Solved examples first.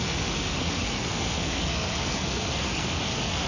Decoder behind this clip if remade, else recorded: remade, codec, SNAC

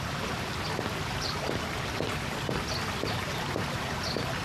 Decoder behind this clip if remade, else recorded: recorded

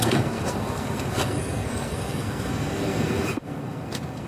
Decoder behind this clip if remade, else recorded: remade, codec, SNAC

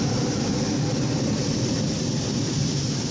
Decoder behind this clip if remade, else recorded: recorded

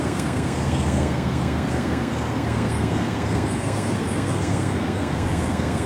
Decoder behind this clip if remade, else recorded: remade, codec, SNAC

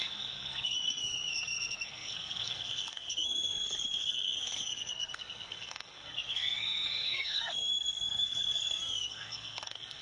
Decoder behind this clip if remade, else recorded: remade, codec, SNAC